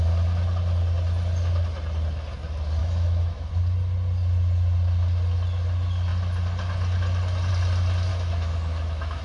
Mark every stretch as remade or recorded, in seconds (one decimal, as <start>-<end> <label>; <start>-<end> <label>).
0.0-2.8 recorded; 2.8-3.5 remade; 3.5-8.1 recorded; 8.1-9.2 remade